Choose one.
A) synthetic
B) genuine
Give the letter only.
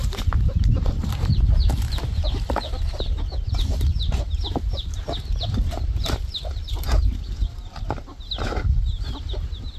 A